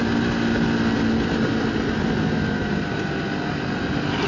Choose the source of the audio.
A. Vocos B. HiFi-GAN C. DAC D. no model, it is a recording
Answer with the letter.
D